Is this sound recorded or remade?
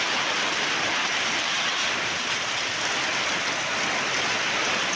recorded